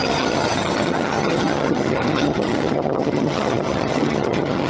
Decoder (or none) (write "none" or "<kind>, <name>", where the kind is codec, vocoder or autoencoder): vocoder, HiFi-GAN